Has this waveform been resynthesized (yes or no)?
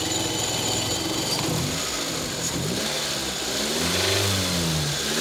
no